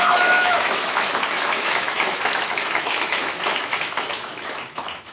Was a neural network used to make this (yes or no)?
yes